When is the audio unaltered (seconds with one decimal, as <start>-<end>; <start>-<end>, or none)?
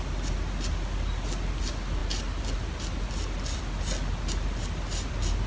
0.0-5.5